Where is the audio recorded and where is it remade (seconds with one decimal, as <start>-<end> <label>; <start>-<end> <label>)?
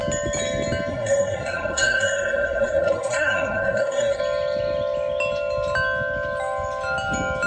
0.0-0.9 recorded; 0.9-4.2 remade; 4.2-7.5 recorded